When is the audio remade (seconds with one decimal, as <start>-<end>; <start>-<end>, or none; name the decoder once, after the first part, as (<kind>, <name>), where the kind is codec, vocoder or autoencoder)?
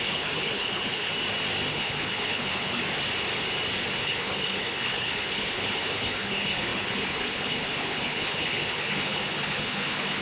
0.0-1.1 (codec, HILCodec); 1.7-2.8; 4.0-10.2